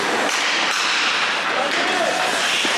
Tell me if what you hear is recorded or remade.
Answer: recorded